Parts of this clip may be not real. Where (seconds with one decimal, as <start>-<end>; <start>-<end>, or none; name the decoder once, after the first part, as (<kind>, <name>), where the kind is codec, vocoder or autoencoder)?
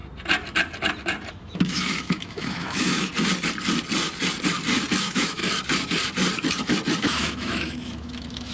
1.3-3.1 (autoencoder, DAC-VAE); 5.0-5.4; 7.0-8.5